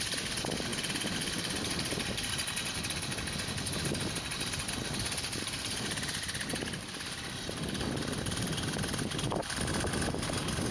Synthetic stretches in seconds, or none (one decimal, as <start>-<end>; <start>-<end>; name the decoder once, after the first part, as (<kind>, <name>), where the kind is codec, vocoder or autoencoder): none

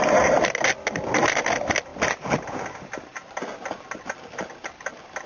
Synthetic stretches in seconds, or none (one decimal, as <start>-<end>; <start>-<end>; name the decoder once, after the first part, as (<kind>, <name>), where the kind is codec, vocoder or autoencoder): none

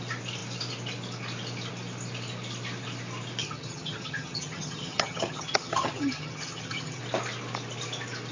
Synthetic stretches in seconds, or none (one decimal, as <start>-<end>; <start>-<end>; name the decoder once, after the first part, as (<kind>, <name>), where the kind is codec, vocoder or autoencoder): 3.4-7.0 (vocoder, HiFi-GAN)